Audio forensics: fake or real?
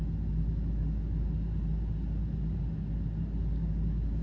real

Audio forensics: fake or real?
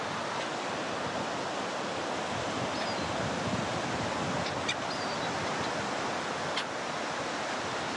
real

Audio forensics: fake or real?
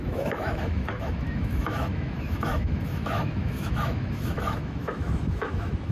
fake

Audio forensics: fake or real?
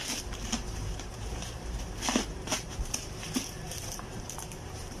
fake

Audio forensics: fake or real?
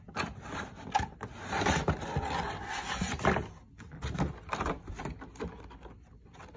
real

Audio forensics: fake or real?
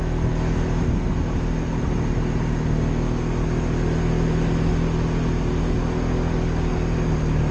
real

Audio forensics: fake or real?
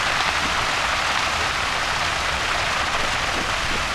real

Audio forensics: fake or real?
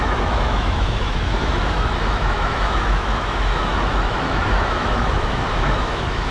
fake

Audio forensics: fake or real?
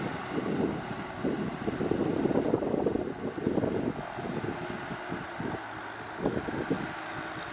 real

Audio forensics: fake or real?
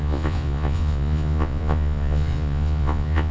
fake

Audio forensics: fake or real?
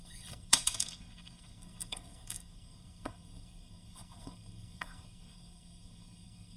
fake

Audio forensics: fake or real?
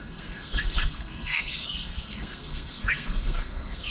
fake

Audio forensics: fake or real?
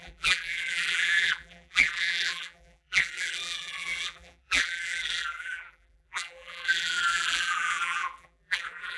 fake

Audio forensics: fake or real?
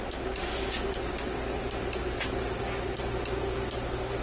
real